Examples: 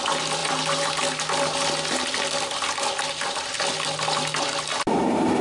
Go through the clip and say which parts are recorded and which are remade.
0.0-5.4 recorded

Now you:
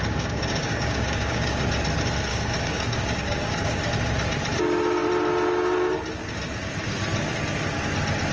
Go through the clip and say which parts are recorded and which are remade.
0.0-1.6 remade; 1.6-2.3 recorded; 2.3-3.9 remade; 3.9-8.3 recorded

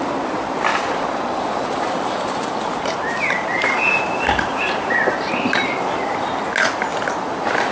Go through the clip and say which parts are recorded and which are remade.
0.0-0.7 recorded; 0.7-5.3 remade; 5.3-7.7 recorded

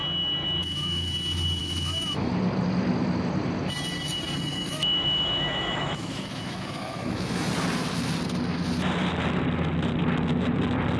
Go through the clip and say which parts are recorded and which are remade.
0.0-0.6 recorded; 0.6-1.1 remade; 1.1-1.6 recorded; 1.6-2.3 remade; 2.3-4.5 recorded; 4.5-7.5 remade; 7.5-11.0 recorded

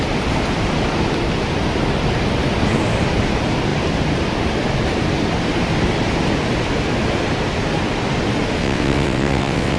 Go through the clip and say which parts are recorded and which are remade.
0.0-8.6 recorded; 8.6-9.8 remade

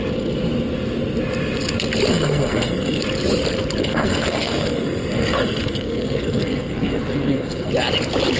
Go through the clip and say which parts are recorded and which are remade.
0.0-2.1 recorded; 2.1-3.0 remade; 3.0-3.8 recorded; 3.8-7.7 remade; 7.7-8.4 recorded

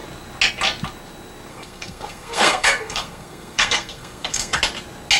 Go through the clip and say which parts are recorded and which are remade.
0.0-1.5 recorded; 1.5-4.6 remade; 4.6-5.2 recorded